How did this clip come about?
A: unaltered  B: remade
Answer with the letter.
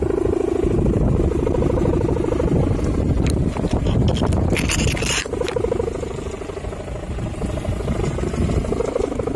A